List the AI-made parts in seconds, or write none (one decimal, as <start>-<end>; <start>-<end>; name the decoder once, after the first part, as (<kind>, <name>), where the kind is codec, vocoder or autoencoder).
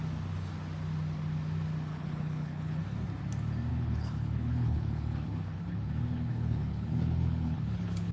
1.9-2.8 (codec, HILCodec); 3.7-8.1